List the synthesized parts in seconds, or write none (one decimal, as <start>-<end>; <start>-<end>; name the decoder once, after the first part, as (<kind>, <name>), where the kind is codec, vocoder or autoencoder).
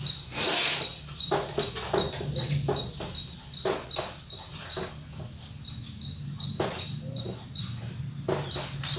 none